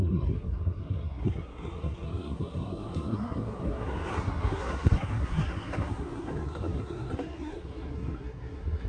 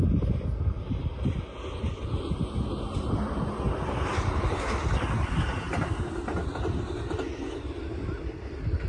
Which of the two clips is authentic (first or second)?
second